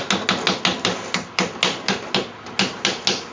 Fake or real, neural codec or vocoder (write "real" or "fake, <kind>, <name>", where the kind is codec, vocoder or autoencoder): real